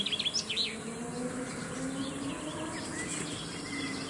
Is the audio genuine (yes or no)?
yes